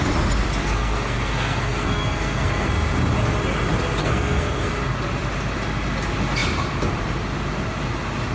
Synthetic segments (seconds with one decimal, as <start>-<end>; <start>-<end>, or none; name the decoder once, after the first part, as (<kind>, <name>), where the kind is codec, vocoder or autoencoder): 0.6-2.7 (codec, SNAC); 4.0-4.7